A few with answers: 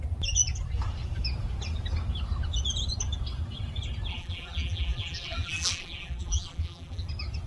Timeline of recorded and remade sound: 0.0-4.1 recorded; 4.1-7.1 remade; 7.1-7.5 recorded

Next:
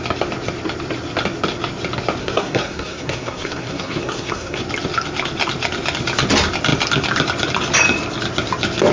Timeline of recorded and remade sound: 0.0-2.2 recorded; 2.2-4.6 remade; 4.6-8.9 recorded